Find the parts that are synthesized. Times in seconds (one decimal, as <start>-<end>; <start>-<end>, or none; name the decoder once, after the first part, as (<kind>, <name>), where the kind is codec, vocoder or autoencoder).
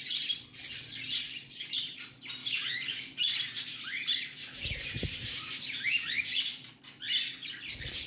2.4-6.8 (vocoder, BigVGAN v2)